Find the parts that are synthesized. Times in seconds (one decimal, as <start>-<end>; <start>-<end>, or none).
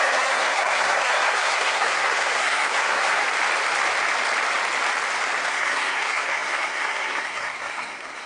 0.0-3.2; 5.5-8.3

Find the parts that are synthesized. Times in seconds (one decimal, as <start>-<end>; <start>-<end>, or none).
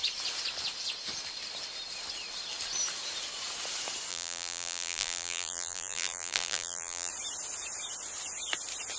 4.1-7.1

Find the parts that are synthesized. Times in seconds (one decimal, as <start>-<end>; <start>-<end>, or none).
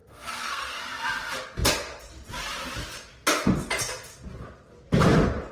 0.0-0.8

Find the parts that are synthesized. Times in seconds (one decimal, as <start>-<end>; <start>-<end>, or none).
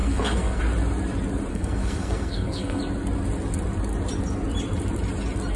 0.0-0.6; 1.5-2.8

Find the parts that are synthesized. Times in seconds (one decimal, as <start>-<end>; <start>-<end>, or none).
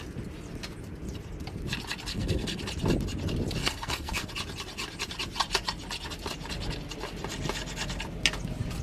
2.1-2.6; 3.6-4.3